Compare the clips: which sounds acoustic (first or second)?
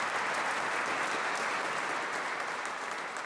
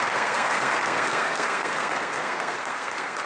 first